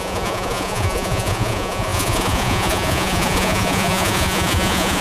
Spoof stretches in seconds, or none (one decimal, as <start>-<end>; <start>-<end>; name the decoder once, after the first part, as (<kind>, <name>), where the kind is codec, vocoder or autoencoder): 0.0-5.0 (vocoder, Vocos)